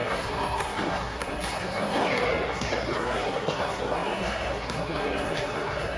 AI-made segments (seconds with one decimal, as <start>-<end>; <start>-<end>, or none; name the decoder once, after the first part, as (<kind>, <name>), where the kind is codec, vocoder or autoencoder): 0.0-6.0 (codec, SNAC)